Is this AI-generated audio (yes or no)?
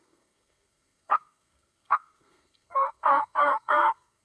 yes